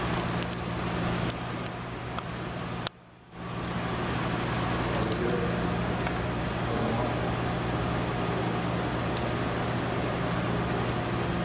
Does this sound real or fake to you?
real